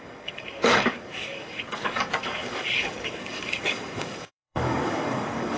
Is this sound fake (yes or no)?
yes